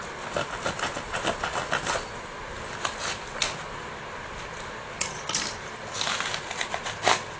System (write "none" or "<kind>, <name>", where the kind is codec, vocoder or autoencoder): none